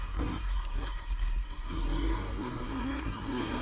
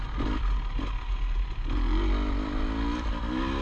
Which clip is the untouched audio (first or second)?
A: second